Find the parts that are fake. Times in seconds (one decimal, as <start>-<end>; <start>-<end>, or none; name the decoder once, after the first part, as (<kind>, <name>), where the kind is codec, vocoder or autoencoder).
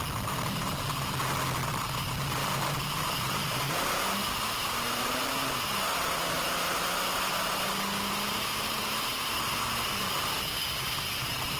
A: none